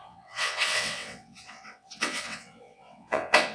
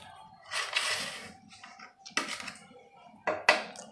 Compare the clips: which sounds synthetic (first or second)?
first